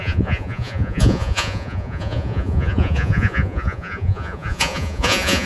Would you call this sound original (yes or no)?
no